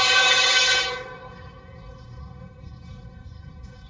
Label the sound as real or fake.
fake